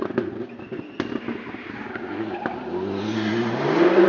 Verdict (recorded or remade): recorded